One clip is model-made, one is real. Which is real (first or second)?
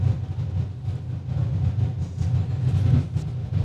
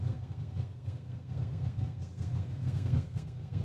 first